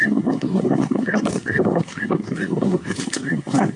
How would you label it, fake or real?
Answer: fake